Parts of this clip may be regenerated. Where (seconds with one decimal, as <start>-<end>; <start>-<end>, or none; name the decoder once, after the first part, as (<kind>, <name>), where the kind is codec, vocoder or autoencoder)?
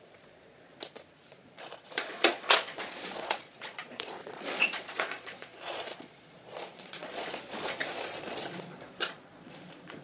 0.0-0.7 (vocoder, Vocos); 1.3-10.0